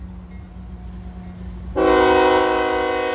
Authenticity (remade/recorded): recorded